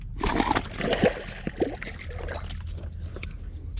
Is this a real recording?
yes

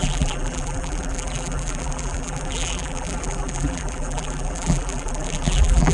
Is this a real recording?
no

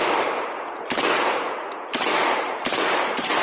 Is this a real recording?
no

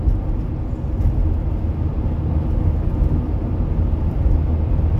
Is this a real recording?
yes